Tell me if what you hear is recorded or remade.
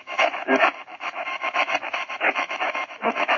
remade